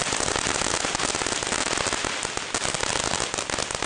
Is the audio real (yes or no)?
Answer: yes